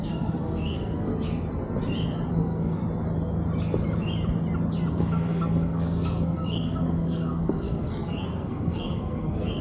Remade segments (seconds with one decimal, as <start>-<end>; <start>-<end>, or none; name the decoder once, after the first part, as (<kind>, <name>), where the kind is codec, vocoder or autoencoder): 0.0-1.1 (codec, SNAC); 2.3-2.8; 4.9-9.6